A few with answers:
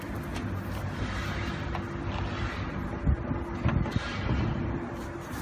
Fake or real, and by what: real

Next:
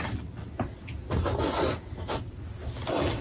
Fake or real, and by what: real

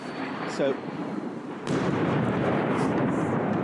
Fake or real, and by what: fake, vocoder, BigVGAN v2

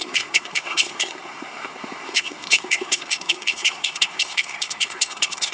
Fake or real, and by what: fake, codec, SNAC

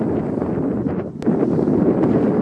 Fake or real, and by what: real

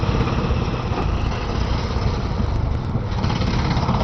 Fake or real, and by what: real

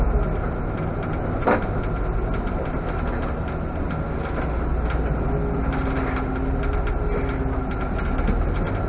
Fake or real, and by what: real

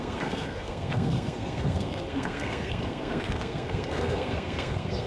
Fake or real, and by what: fake, codec, SNAC